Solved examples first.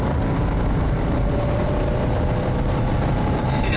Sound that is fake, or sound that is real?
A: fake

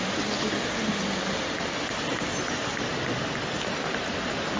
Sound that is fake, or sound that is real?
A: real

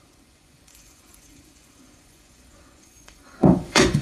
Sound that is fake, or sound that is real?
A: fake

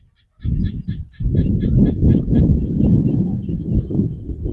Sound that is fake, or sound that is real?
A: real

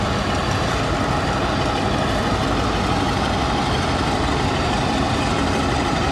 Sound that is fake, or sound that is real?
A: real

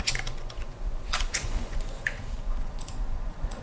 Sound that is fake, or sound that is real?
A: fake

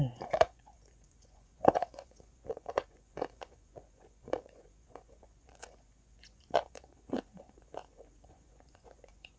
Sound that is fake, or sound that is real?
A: fake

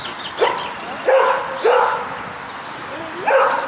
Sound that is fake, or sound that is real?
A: real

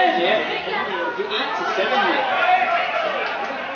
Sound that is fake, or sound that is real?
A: real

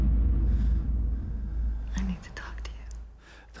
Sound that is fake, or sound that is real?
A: real